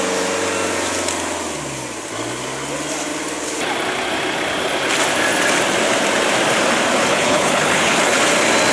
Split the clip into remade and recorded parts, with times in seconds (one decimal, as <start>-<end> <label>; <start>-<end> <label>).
0.0-7.1 recorded; 7.1-8.2 remade; 8.2-8.7 recorded